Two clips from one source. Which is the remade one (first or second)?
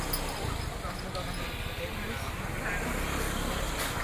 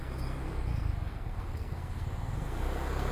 second